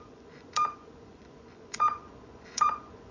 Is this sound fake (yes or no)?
yes